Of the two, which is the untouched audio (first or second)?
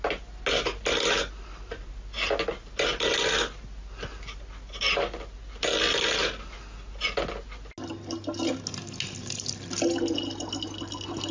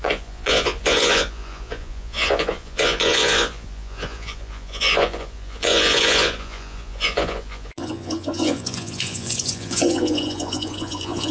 first